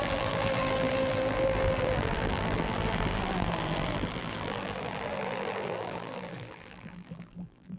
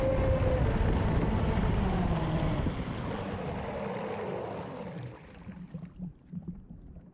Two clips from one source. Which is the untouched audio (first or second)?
second